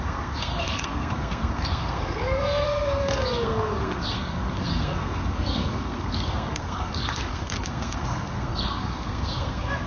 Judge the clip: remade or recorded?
remade